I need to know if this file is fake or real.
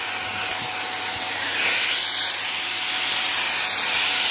real